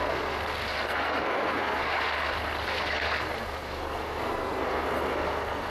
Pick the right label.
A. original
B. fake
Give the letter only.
B